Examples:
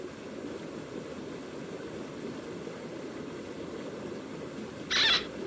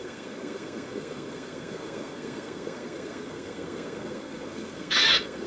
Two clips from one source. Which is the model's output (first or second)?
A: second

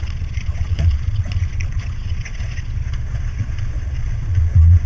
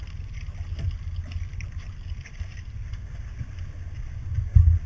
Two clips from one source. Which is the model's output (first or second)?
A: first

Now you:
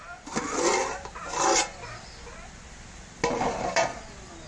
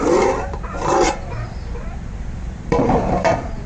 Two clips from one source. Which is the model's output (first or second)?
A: second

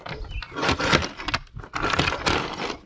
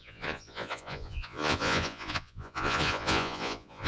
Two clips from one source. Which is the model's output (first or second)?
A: second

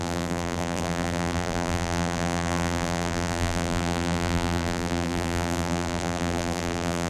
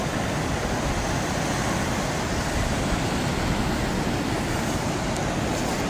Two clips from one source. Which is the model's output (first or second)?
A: first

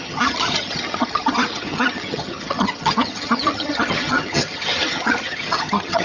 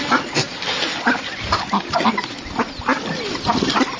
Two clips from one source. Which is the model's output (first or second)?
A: first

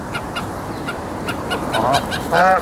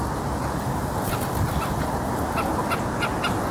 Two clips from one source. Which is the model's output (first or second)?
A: first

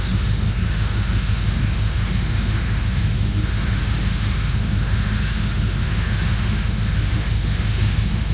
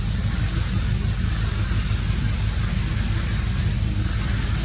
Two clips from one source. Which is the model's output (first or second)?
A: first